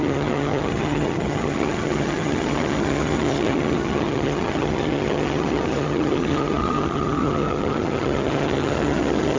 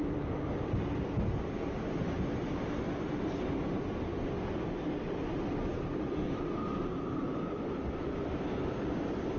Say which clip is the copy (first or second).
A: first